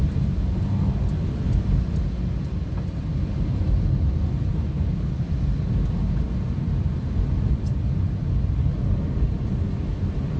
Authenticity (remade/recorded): recorded